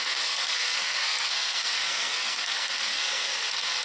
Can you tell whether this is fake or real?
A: fake